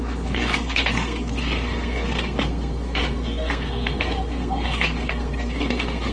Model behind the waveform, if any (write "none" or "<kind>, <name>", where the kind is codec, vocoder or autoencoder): codec, SNAC